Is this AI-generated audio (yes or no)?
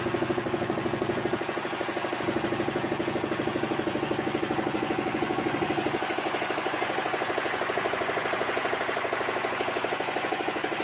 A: yes